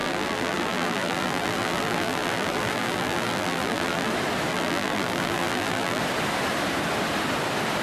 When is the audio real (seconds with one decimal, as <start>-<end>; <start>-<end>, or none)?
4.1-4.5; 6.0-7.8